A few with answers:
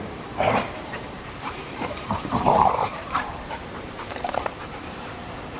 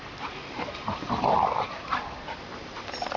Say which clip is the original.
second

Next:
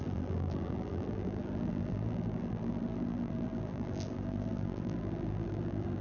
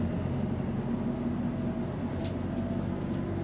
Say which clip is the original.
second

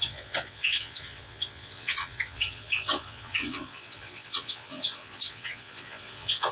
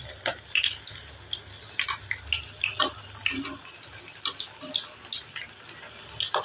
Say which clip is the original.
second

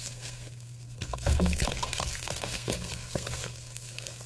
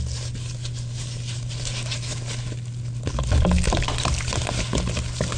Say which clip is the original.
second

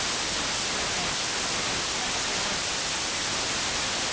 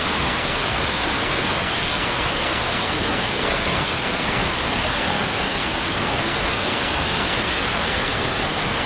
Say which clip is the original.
first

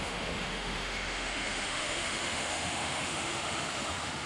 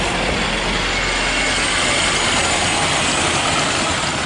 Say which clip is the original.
second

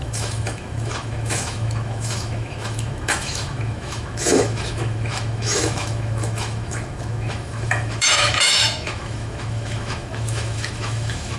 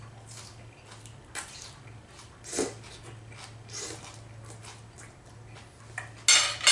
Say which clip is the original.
second